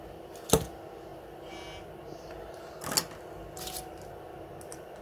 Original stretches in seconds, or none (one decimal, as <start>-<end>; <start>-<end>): 0.0-5.0